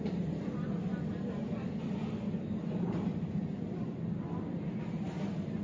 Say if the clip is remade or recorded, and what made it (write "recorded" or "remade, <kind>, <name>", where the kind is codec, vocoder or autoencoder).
recorded